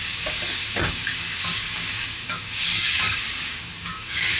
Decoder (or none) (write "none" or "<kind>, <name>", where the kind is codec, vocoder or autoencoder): codec, DAC